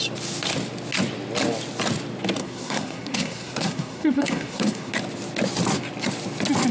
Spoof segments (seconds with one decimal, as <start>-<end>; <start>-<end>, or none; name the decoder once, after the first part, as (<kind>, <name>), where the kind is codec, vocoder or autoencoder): 2.4-4.9 (codec, SNAC)